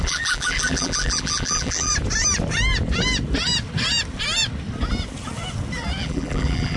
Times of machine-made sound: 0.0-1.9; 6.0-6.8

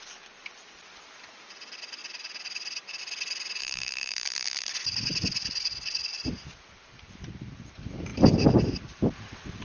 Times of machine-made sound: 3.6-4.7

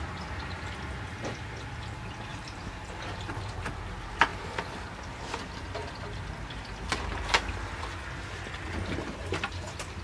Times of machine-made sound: 2.3-3.2; 9.2-10.0

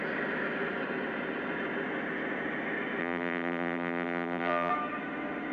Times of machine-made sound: 3.0-4.7

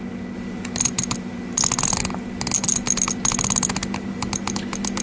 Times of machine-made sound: none

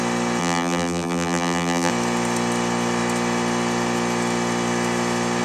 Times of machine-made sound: 0.4-1.9